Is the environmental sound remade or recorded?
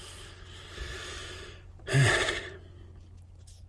recorded